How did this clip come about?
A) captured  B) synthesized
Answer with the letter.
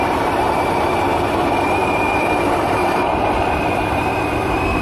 B